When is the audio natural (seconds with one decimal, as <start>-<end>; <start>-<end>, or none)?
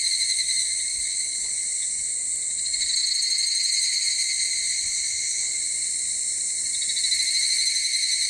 0.0-0.9; 1.5-8.3